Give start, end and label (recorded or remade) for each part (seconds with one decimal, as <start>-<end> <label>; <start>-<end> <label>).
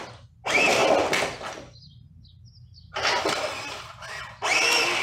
0.0-5.0 recorded